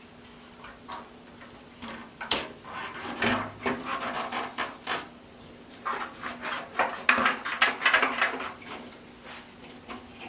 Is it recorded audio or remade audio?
recorded